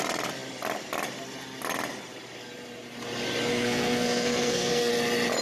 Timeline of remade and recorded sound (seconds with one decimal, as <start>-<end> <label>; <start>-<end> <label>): 0.0-3.5 recorded; 3.5-4.9 remade; 4.9-5.4 recorded